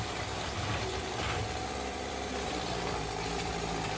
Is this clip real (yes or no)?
no